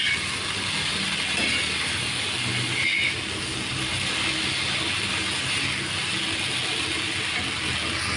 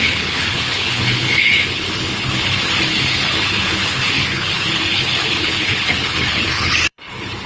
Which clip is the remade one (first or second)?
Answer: second